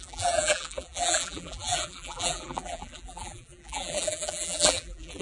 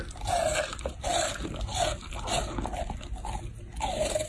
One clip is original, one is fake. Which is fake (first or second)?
first